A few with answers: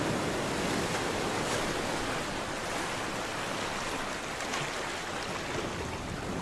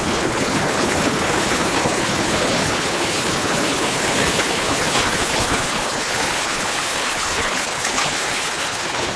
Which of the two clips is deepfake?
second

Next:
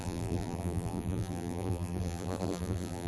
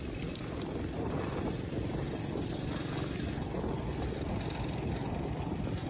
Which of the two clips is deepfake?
first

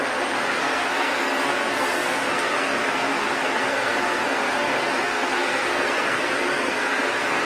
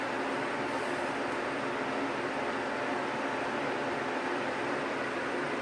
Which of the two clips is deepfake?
first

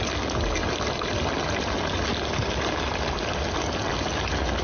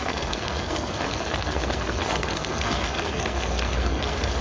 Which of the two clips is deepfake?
second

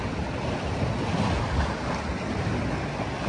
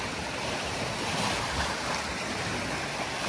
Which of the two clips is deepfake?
second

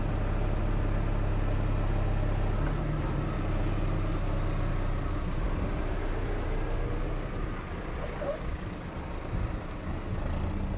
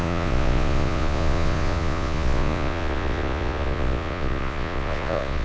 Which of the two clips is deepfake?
second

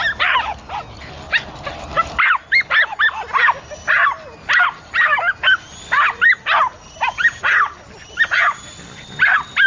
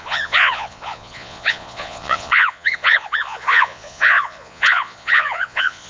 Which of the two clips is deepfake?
second